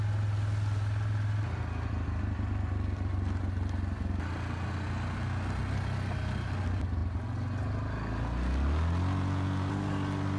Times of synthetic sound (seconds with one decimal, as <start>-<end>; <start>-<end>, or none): none